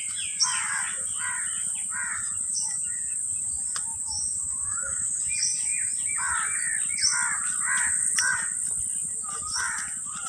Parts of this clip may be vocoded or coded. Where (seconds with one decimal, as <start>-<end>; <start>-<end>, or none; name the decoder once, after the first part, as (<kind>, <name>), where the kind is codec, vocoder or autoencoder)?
3.9-5.2 (autoencoder, DAC-VAE)